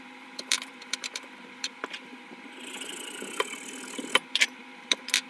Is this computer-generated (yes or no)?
yes